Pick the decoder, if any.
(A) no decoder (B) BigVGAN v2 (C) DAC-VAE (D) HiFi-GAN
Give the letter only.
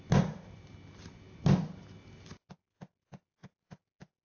A